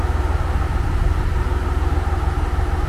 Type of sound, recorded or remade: recorded